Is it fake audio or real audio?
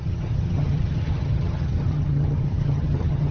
fake